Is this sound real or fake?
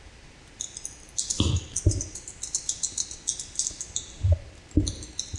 real